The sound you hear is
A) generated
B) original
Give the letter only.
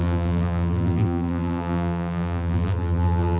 A